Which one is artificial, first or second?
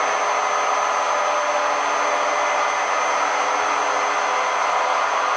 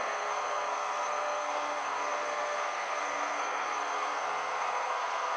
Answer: second